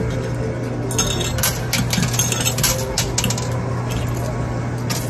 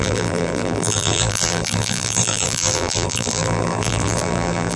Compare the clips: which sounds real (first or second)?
first